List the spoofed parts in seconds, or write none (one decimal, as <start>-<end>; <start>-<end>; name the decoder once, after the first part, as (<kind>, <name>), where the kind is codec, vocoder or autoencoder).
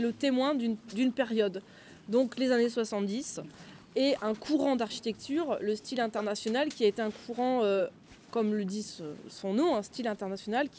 none